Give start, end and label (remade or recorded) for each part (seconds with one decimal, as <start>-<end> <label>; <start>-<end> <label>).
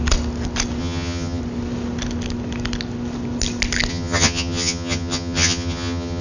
0.0-0.8 recorded; 0.8-1.4 remade; 1.4-3.9 recorded; 3.9-6.2 remade